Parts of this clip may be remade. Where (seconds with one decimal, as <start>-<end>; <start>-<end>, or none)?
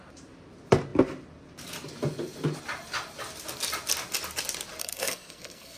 4.8-5.8